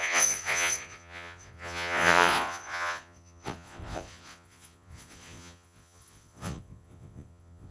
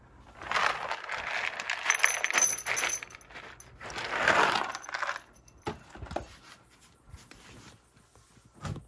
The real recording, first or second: second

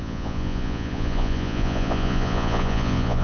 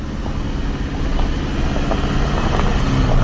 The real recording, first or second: second